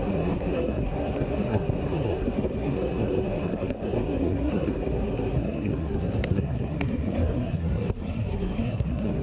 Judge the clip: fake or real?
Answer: fake